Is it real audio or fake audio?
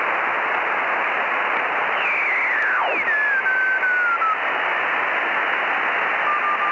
real